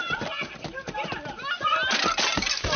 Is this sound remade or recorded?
recorded